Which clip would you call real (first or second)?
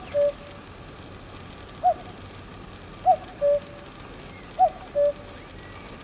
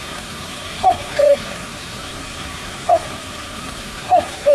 first